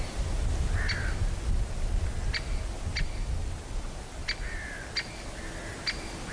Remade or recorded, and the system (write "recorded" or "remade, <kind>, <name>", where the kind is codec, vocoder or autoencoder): recorded